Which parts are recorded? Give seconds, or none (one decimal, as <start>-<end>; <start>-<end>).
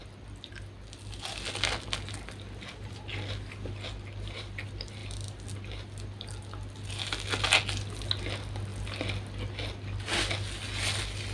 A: 0.0-11.3